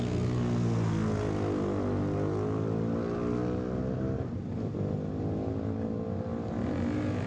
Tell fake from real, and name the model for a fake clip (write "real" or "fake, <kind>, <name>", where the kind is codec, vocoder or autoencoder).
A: real